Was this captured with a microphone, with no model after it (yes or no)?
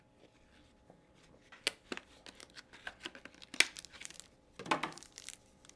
yes